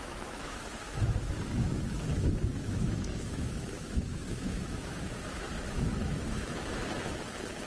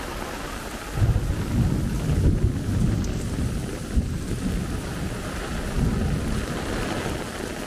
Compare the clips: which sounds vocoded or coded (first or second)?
first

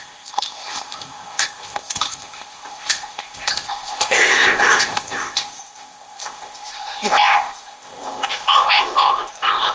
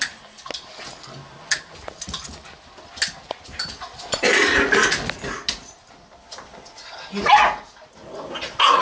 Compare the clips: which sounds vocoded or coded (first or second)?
first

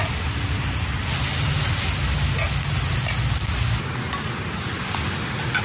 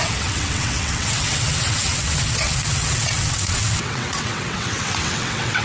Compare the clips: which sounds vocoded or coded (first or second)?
second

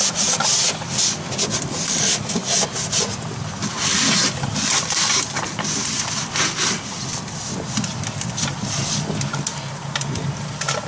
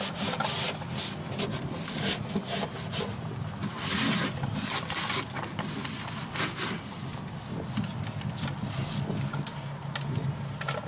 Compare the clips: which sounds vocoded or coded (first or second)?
first